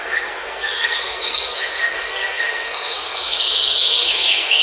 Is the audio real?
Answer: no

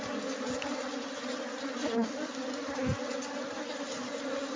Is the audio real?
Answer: yes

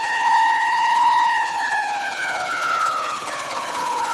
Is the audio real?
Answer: no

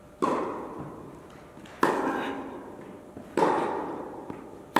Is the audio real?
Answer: yes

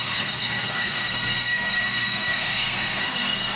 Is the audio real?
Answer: no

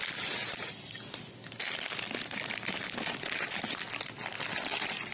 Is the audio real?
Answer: yes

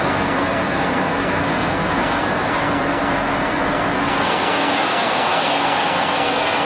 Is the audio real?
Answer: no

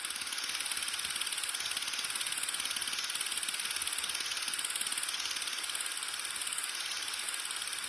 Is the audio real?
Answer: yes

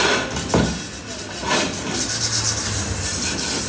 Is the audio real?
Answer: yes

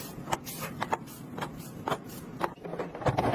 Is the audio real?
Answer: yes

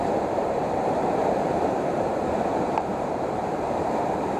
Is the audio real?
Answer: no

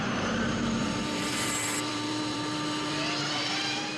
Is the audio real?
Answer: no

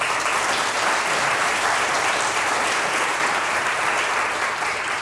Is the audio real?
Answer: no